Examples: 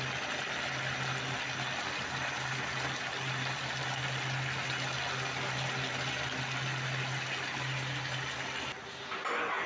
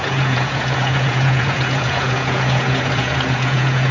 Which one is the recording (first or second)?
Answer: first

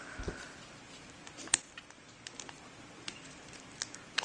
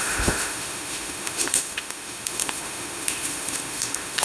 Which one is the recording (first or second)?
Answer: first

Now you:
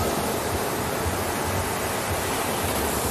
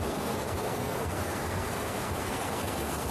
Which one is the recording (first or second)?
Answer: first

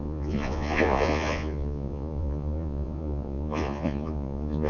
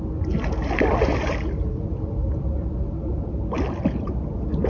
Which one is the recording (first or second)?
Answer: second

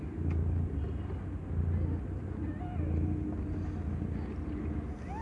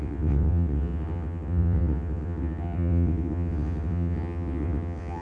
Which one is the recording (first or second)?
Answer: first